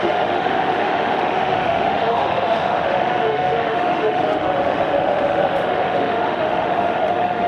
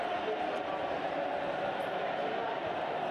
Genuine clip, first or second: second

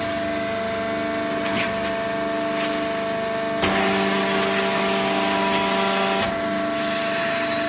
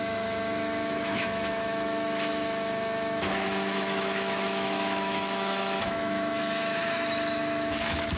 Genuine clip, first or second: first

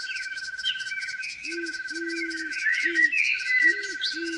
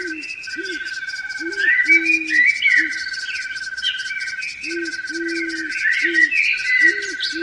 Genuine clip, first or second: second